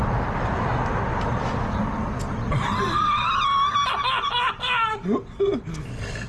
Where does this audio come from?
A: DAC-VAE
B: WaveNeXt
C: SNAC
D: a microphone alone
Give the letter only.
D